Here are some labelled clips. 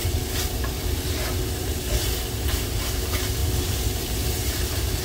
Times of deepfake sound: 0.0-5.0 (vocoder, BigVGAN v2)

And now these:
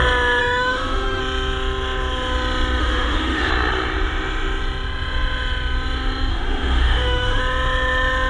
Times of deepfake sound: 0.4-1.2 (autoencoder, DAC-VAE); 2.8-3.5; 6.3-7.4

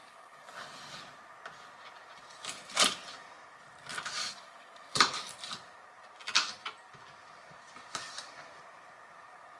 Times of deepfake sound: 0.0-1.0 (codec, DAC); 4.2-5.1

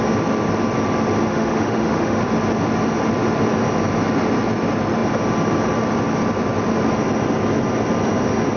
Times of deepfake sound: 1.3-2.2 (autoencoder, DAC-VAE)

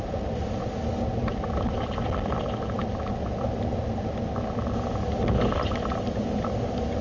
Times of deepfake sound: none

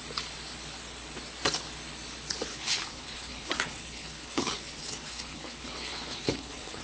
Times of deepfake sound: 2.5-6.8 (codec, HILCodec)

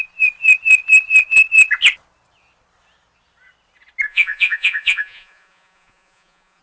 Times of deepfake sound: 4.1-6.6 (vocoder, Vocos)